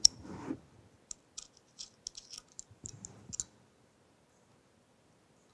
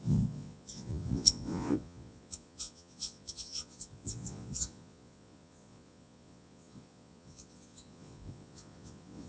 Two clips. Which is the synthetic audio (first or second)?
second